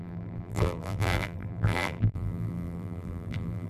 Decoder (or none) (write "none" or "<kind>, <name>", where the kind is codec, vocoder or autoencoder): vocoder, BigVGAN v2